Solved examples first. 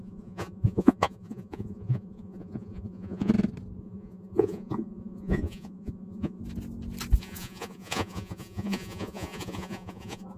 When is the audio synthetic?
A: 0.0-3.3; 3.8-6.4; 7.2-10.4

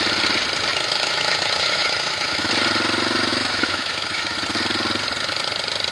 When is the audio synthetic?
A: 0.7-2.5; 3.3-4.4

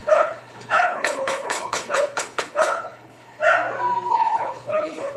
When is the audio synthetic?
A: 0.0-3.4; 4.1-5.2

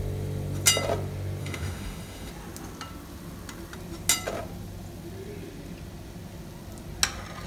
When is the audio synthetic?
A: 1.4-2.3

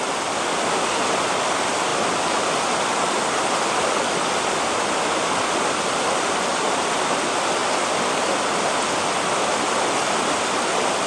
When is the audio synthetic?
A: none

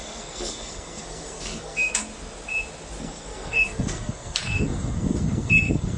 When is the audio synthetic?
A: 0.0-2.0; 3.0-6.0

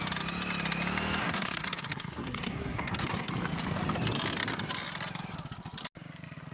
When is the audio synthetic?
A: 1.2-3.3

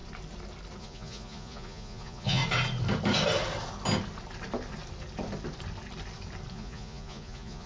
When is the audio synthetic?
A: 0.8-2.4; 6.5-7.7